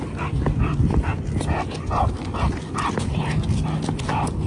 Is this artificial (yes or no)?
no